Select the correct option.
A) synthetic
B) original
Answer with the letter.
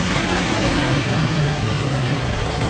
A